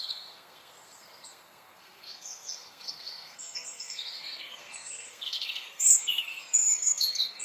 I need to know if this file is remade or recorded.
remade